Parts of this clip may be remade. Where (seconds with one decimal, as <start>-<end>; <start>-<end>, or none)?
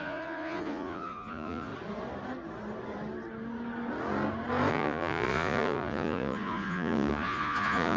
0.0-1.7; 4.7-8.0